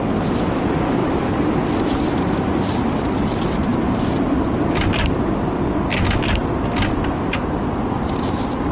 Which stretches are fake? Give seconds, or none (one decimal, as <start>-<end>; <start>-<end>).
1.0-3.1